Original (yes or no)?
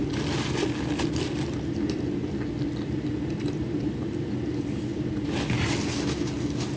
yes